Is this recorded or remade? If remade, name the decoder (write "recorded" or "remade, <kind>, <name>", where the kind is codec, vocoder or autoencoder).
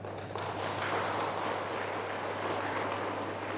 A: recorded